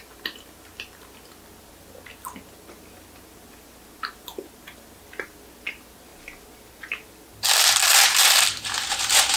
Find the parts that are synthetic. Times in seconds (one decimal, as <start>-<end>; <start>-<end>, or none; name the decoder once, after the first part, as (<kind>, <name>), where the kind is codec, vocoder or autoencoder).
none